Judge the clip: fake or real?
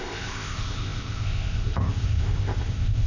fake